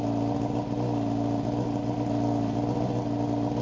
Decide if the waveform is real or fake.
real